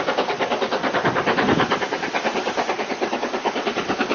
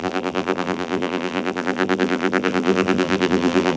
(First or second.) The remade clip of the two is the second